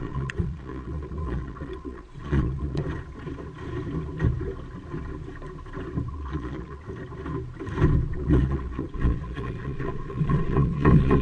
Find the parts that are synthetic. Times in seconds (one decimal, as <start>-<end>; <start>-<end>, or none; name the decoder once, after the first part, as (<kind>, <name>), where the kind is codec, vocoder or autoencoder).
0.0-2.8 (vocoder, Vocos); 6.1-6.8; 8.1-11.2